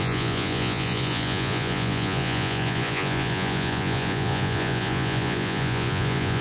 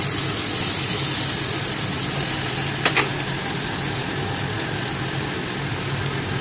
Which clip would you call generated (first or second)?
first